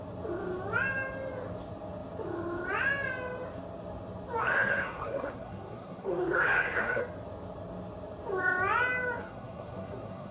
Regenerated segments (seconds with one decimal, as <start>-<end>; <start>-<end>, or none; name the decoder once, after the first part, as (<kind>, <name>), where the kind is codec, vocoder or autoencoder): 4.4-7.0 (codec, SNAC); 9.2-10.3